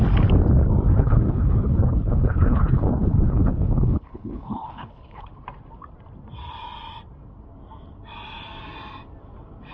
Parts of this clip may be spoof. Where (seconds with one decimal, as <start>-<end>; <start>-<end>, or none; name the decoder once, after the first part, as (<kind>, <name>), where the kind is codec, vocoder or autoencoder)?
0.9-5.3 (codec, HILCodec)